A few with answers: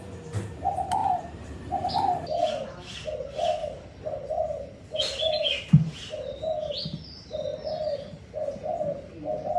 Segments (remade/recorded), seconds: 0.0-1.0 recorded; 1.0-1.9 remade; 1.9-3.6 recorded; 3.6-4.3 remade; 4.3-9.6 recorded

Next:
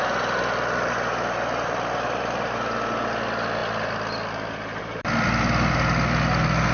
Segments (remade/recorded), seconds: 0.0-6.7 recorded

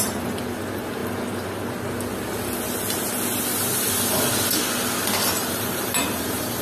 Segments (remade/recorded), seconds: 0.0-5.4 recorded; 5.4-6.6 remade

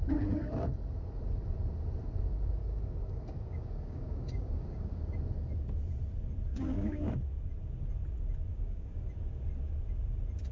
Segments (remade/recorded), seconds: 0.0-2.6 recorded; 2.6-5.2 remade; 5.2-6.5 recorded; 6.5-7.1 remade; 7.1-8.5 recorded; 8.5-9.1 remade; 9.1-10.5 recorded

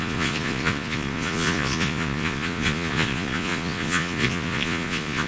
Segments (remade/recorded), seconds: 0.0-5.3 remade

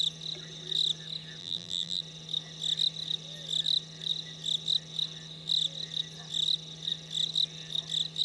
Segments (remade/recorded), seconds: 0.0-1.4 recorded; 1.4-2.0 remade; 2.0-8.2 recorded